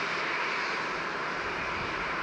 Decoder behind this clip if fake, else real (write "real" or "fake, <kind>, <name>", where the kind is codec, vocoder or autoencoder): fake, vocoder, BigVGAN v2